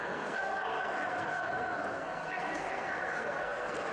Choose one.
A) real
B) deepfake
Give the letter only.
B